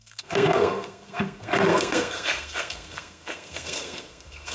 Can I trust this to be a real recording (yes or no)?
no